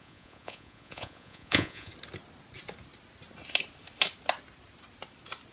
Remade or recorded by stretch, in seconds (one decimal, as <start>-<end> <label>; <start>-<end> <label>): 0.0-1.9 remade; 1.9-5.5 recorded